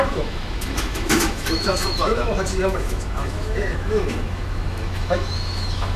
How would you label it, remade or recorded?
remade